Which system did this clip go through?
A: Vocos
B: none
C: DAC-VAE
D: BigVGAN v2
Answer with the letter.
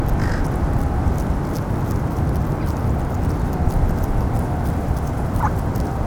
B